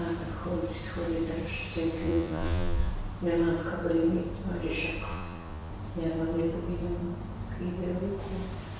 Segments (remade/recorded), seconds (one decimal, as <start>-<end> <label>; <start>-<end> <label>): 0.0-2.0 recorded; 2.0-2.9 remade; 2.9-5.1 recorded; 5.1-5.7 remade; 5.7-8.8 recorded